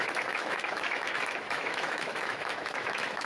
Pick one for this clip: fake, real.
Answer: fake